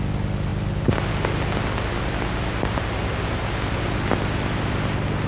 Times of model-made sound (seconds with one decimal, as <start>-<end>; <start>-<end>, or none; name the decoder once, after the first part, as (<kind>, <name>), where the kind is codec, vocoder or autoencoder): 2.7-3.4 (vocoder, BigVGAN v2)